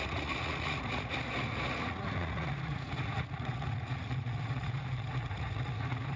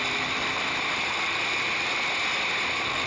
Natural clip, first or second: second